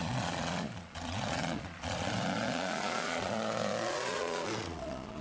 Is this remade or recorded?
remade